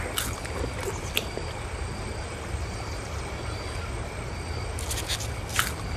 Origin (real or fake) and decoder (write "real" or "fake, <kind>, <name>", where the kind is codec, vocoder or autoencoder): fake, vocoder, BigVGAN v2